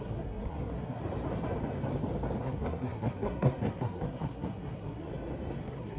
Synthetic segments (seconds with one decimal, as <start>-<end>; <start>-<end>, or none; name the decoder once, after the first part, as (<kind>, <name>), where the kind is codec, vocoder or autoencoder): 0.0-1.0 (codec, SNAC); 2.4-5.1; 5.6-6.0